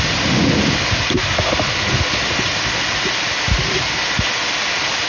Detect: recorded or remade recorded